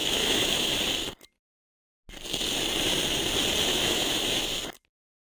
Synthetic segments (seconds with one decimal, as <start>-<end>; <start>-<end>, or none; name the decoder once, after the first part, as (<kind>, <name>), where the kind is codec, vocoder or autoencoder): 0.0-0.8 (autoencoder, DAC-VAE); 3.7-4.4